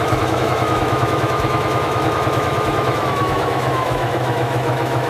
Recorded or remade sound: remade